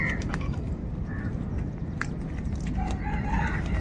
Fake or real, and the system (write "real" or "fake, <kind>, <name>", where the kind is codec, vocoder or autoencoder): real